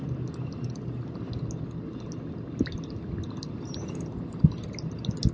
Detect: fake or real real